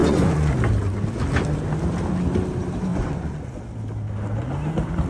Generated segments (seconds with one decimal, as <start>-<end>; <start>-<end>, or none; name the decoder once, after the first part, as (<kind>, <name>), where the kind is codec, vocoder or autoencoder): 0.0-0.5 (vocoder, Vocos); 2.9-3.6